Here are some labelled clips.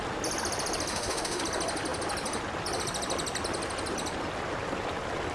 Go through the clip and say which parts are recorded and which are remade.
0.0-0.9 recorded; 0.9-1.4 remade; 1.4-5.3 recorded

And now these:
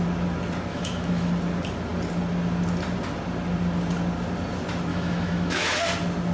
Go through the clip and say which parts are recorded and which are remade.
0.0-0.7 recorded; 0.7-1.3 remade; 1.3-4.9 recorded; 4.9-5.8 remade; 5.8-6.3 recorded

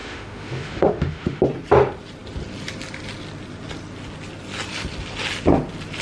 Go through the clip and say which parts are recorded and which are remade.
0.0-1.4 remade; 1.4-6.0 recorded